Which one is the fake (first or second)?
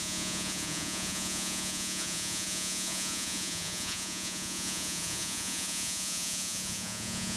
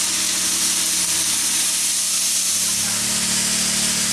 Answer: first